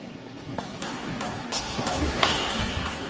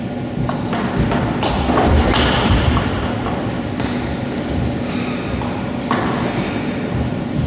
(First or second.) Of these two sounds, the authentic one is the second